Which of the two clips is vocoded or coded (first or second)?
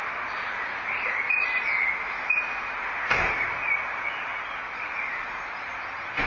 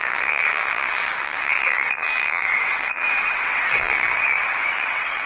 second